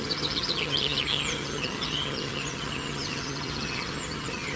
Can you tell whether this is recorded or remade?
remade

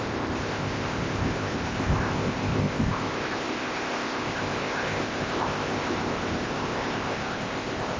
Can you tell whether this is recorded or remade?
remade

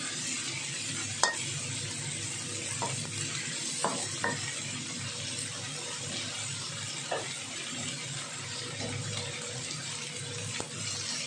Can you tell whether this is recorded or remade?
recorded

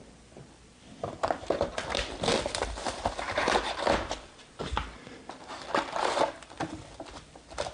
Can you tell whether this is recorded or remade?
remade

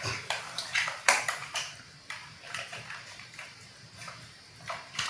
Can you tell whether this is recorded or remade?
remade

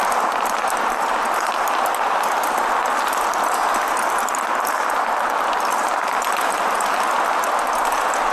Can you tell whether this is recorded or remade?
recorded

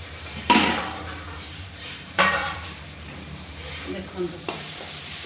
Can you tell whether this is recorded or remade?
remade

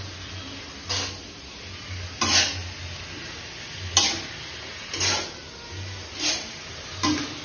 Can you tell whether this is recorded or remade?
recorded